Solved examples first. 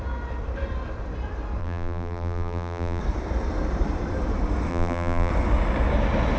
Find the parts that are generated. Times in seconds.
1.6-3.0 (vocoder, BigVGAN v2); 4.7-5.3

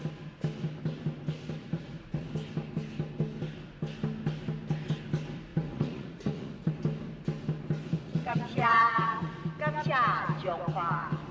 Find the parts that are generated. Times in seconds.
1.6-2.3 (vocoder, Vocos); 5.5-6.7; 7.9-9.5

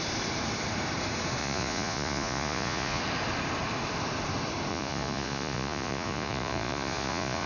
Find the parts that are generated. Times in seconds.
1.4-3.0 (vocoder, Vocos); 4.7-7.5